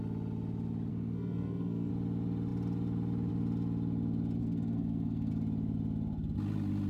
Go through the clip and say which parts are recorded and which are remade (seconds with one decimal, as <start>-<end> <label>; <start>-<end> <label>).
0.0-0.9 recorded; 0.9-1.9 remade; 1.9-4.4 recorded; 4.4-5.3 remade; 5.3-6.9 recorded